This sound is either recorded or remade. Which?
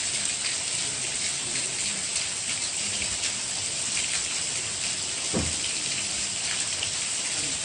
recorded